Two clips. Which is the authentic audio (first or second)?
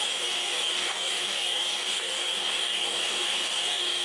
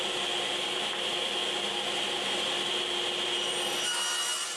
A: second